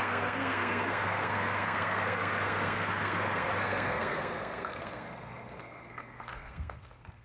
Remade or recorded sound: remade